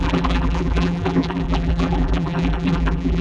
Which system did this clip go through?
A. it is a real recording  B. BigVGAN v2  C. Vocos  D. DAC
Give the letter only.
B